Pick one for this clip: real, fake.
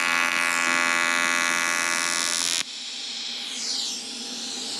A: real